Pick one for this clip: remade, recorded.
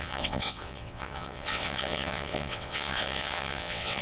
remade